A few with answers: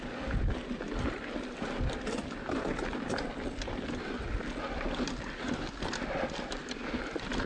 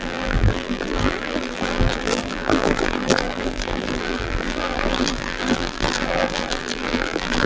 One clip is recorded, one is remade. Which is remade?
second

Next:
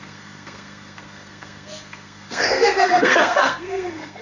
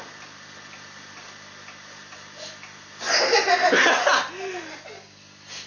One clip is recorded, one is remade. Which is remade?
first